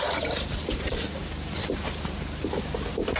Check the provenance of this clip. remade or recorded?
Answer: recorded